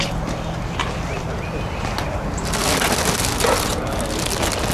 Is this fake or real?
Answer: real